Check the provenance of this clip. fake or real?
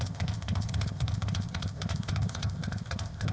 fake